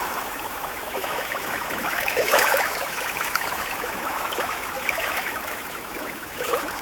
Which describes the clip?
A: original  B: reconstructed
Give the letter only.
B